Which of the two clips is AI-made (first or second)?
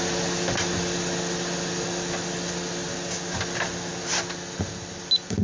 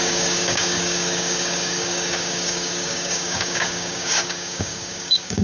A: second